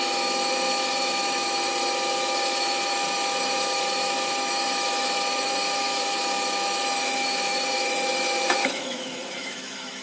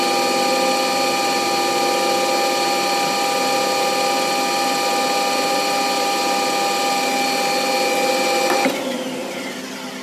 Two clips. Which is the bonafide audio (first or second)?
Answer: second